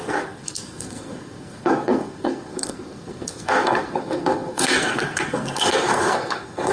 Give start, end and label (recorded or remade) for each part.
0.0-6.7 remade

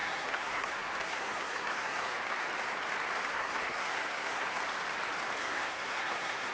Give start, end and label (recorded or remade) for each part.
0.0-2.1 remade; 2.1-3.3 recorded; 3.3-4.6 remade; 4.6-5.4 recorded; 5.4-6.5 remade